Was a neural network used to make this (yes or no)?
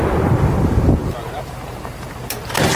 yes